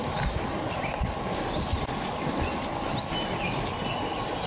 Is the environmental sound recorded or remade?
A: recorded